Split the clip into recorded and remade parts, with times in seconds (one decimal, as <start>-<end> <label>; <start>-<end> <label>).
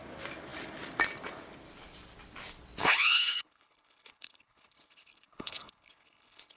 0.0-2.8 recorded; 2.8-6.6 remade